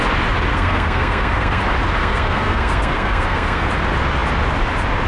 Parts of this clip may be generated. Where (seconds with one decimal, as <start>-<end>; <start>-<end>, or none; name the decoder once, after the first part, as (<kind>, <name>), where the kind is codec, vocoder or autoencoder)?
0.5-1.6 (codec, SNAC); 2.0-3.7